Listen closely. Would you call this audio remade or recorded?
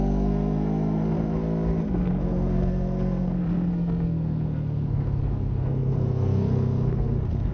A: remade